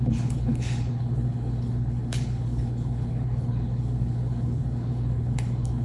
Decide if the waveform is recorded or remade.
remade